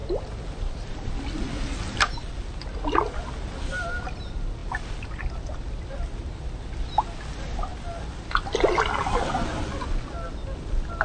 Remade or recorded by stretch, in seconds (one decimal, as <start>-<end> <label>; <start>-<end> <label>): 0.0-11.0 recorded